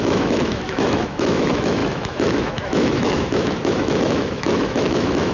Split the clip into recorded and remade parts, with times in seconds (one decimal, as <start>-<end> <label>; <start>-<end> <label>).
0.0-5.3 remade